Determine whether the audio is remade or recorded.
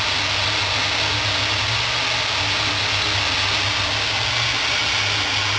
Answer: recorded